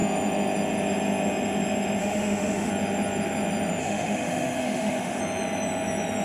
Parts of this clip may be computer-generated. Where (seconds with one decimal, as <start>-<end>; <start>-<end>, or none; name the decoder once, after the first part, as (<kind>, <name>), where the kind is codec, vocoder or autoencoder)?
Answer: 2.0-2.7 (autoencoder, DAC-VAE); 3.8-5.2